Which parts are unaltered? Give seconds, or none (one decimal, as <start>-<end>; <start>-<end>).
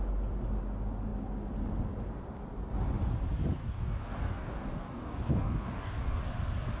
0.0-3.6; 6.2-6.8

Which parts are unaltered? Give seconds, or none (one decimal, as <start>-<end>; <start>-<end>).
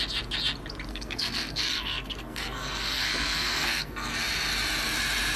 0.0-0.9; 4.1-5.4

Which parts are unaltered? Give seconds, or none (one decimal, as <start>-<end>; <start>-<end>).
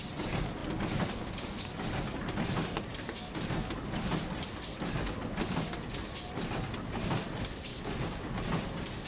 0.0-7.7; 8.3-9.1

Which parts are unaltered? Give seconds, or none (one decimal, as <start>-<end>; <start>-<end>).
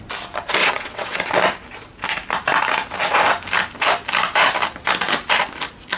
0.0-0.6; 1.2-6.0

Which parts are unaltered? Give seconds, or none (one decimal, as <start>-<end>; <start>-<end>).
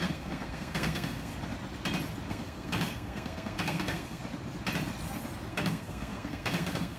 1.3-2.3; 4.2-5.5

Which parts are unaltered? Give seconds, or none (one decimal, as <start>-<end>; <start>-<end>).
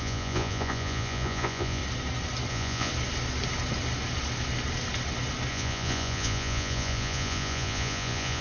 1.8-2.5; 2.9-5.5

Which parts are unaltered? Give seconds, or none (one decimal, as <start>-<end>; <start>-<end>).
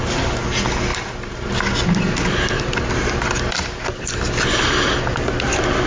0.0-5.9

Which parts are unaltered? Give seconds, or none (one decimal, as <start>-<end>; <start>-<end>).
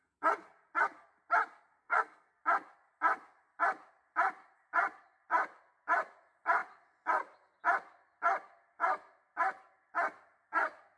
0.0-1.8; 2.4-11.0